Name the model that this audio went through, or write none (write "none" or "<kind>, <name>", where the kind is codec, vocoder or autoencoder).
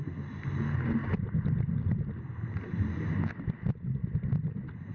none